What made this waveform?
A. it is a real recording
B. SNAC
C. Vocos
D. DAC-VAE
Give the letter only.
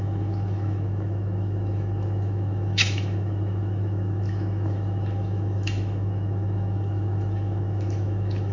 D